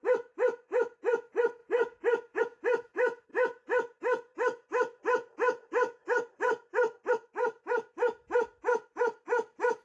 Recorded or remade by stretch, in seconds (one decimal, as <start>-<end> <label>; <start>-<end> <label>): 0.0-9.8 recorded